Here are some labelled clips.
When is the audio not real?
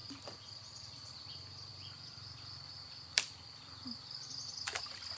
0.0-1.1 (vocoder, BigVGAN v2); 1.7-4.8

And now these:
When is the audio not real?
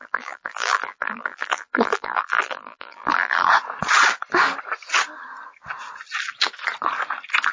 0.0-3.5 (vocoder, BigVGAN v2)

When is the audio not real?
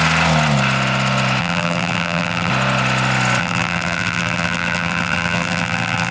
1.4-2.5 (vocoder, BigVGAN v2); 3.4-6.1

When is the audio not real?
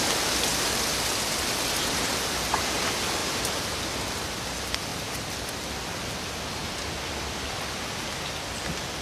3.2-3.8 (vocoder, BigVGAN v2)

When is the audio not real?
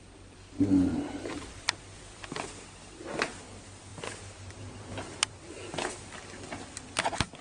0.9-1.6 (vocoder, BigVGAN v2); 3.9-6.0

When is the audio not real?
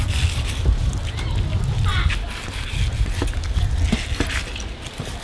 none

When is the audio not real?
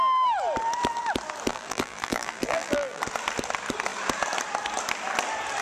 1.5-3.0 (vocoder, BigVGAN v2)